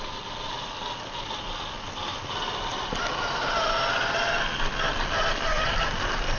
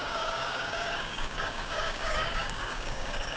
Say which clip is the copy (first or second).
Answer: second